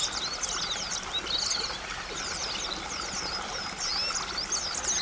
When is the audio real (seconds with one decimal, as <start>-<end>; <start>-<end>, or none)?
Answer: 0.0-5.0